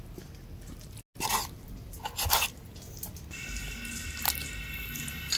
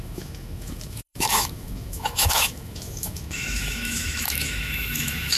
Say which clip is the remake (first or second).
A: second